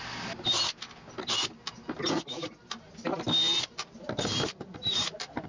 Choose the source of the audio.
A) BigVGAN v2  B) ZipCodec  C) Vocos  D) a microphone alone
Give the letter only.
D